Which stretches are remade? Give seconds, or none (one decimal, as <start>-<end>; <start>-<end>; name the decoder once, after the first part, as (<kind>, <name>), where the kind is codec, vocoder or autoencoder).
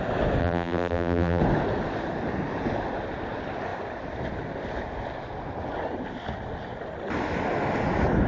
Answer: 0.4-1.4 (vocoder, BigVGAN v2)